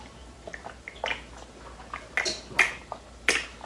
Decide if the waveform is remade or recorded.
recorded